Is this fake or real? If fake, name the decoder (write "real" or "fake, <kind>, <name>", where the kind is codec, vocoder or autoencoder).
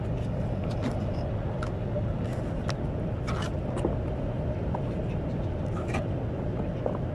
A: real